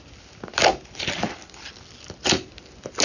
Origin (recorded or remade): recorded